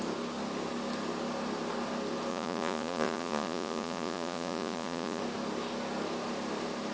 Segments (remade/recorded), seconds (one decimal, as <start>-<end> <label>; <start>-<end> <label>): 0.0-2.3 recorded; 2.3-5.2 remade; 5.2-6.9 recorded